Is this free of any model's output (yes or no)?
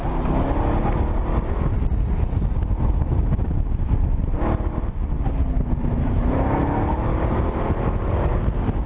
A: yes